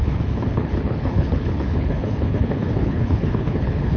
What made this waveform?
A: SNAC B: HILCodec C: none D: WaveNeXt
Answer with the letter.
B